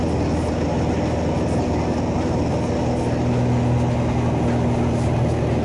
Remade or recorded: recorded